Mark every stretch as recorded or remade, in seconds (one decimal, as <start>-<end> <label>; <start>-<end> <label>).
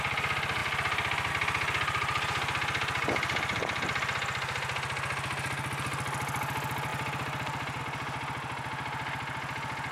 0.0-9.9 recorded